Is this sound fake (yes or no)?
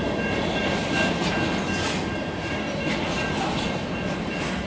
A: no